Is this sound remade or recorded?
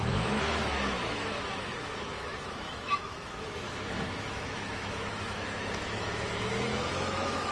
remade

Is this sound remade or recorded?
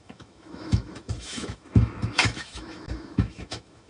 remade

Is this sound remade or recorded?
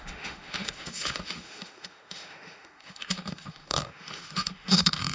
remade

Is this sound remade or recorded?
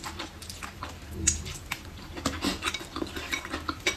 recorded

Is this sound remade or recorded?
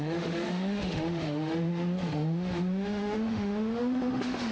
remade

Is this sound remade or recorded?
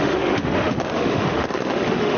remade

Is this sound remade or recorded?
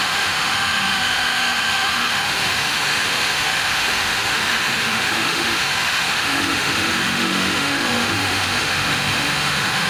remade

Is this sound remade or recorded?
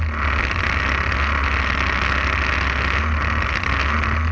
recorded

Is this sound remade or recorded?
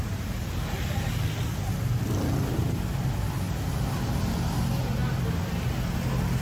recorded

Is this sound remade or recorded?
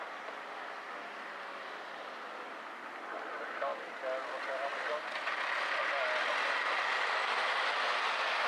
recorded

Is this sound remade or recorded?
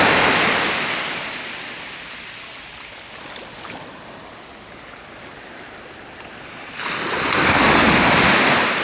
recorded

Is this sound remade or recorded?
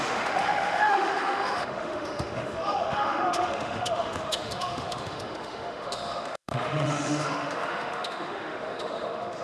remade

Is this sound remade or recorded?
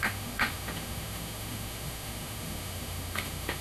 remade